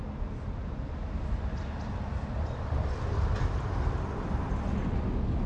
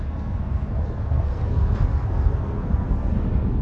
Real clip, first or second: first